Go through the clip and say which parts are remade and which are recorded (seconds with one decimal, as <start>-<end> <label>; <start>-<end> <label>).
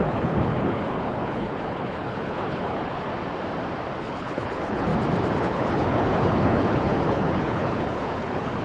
0.0-3.1 remade; 3.1-4.0 recorded; 4.0-4.9 remade; 4.9-5.4 recorded; 5.4-8.6 remade